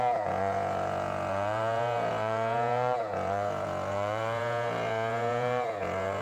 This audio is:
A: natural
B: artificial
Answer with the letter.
B